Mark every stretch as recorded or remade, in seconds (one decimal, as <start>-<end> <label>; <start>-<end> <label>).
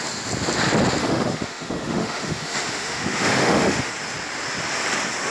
0.0-1.0 recorded; 1.0-3.9 remade; 3.9-5.3 recorded